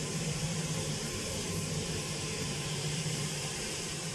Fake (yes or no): yes